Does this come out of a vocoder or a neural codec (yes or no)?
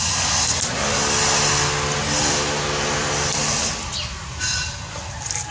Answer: no